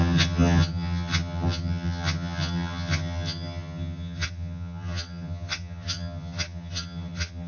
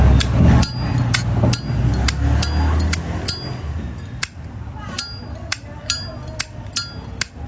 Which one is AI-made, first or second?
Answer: first